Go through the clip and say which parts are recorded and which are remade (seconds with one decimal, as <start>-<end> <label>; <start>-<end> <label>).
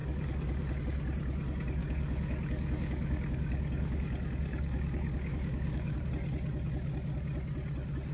0.0-0.8 remade; 0.8-1.8 recorded; 1.8-6.1 remade; 6.1-8.1 recorded